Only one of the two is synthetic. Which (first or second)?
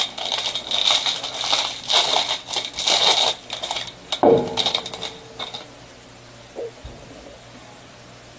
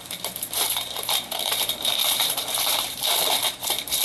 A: second